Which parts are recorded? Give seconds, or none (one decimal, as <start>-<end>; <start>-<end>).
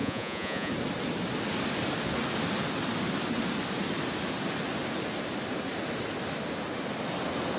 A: 0.7-7.6